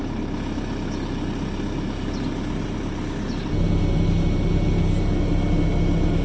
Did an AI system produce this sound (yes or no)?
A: no